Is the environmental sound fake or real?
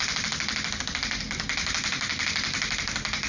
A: real